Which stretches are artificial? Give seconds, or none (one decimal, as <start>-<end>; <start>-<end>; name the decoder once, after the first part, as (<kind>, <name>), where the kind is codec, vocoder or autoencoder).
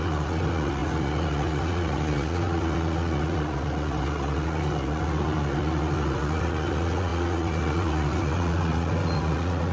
0.0-9.7 (vocoder, Vocos)